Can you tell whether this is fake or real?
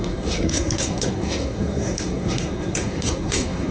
fake